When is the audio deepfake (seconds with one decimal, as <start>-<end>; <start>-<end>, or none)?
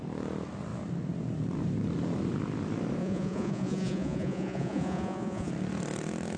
3.0-5.5